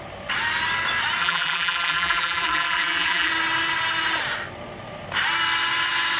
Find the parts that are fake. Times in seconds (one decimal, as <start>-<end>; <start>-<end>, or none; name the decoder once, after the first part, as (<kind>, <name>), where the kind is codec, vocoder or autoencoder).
1.2-3.3 (vocoder, BigVGAN v2)